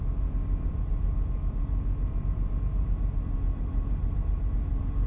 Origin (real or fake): fake